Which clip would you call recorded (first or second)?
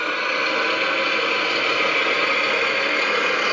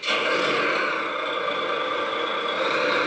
first